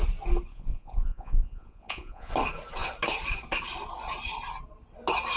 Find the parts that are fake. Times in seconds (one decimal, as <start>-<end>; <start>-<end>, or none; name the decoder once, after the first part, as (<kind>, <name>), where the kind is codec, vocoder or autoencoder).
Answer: 0.5-2.3 (vocoder, Vocos)